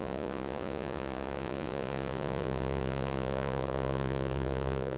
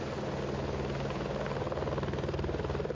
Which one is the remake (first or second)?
first